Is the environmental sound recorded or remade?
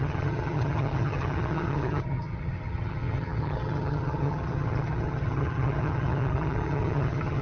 remade